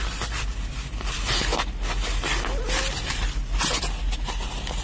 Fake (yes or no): no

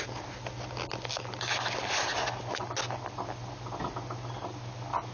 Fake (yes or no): no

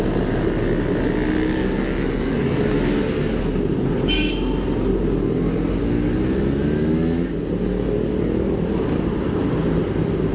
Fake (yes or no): no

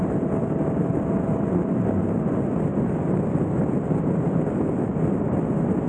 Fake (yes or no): no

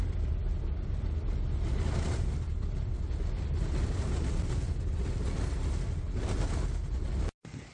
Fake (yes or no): no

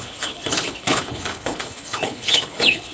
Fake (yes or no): yes